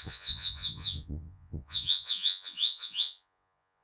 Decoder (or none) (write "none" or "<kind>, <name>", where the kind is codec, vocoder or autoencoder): vocoder, Vocos